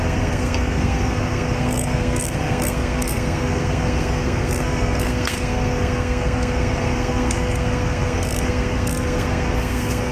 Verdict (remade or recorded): remade